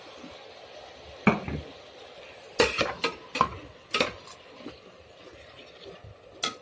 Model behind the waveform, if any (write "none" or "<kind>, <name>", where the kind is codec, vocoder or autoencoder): none